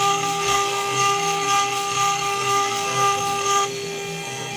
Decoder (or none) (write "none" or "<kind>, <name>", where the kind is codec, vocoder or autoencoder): codec, SNAC